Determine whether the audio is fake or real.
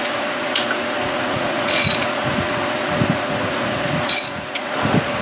fake